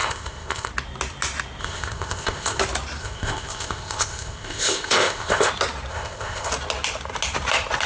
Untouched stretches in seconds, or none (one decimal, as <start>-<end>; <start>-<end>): 0.7-1.6; 2.6-3.0; 5.5-5.9; 6.5-7.9